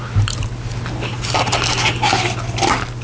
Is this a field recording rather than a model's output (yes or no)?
yes